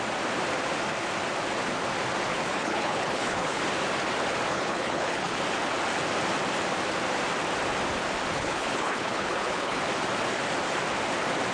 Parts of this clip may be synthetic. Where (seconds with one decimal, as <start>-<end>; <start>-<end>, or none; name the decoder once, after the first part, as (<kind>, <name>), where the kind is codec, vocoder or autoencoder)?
2.3-3.6 (codec, HILCodec); 4.5-5.4; 8.3-9.8